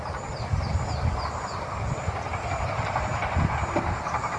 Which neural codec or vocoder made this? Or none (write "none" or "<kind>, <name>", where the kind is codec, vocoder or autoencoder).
none